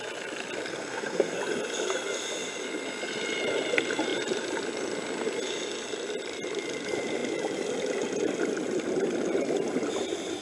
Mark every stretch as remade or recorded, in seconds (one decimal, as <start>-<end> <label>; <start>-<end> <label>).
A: 0.0-0.7 recorded; 0.7-1.4 remade; 1.4-10.4 recorded